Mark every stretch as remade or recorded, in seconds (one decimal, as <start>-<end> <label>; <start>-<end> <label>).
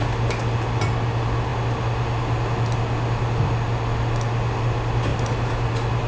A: 0.0-6.1 recorded